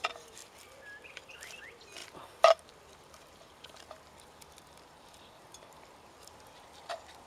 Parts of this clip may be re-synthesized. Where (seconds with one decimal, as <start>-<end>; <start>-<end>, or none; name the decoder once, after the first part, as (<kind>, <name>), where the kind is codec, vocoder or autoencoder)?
none